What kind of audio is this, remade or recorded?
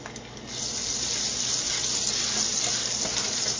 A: recorded